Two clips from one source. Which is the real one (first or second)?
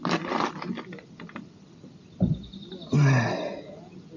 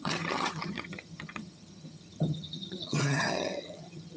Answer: first